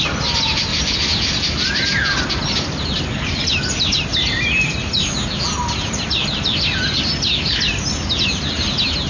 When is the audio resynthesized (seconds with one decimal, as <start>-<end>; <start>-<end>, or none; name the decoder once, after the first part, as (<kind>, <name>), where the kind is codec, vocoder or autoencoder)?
none